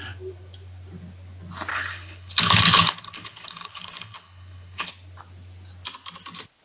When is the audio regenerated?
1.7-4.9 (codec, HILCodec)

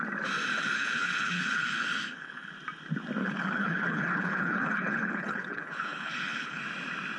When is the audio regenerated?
0.5-2.5 (codec, HILCodec); 3.2-6.6

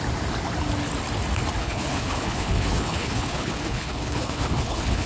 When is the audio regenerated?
1.6-5.1 (codec, HILCodec)

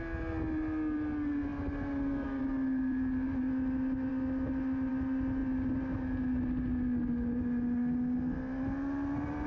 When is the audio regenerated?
none

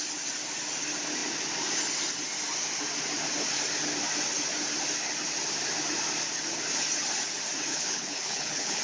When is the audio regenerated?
7.7-8.8 (codec, HILCodec)

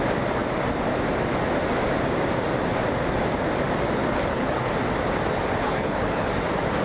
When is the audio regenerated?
4.0-4.7 (codec, HILCodec); 5.5-6.3